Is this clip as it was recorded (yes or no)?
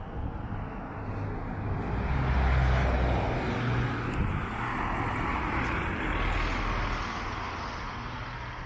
yes